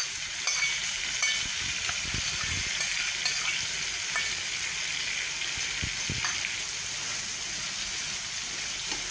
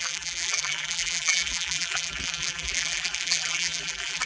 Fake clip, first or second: second